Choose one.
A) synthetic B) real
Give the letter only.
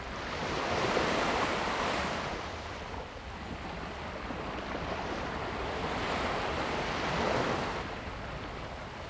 B